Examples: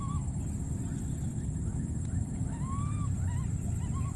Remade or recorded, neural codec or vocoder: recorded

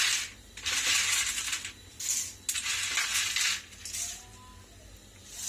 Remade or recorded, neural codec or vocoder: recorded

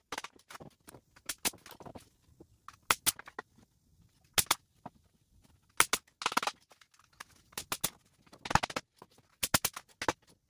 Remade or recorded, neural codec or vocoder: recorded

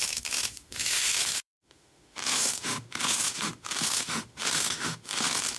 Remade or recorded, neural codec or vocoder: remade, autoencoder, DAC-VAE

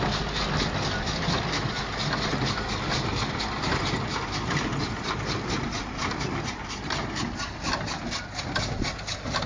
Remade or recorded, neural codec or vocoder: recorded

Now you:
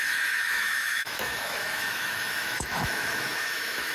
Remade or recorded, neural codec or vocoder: remade, autoencoder, DAC-VAE